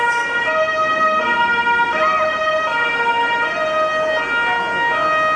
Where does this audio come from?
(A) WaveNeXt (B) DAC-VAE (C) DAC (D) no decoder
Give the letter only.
D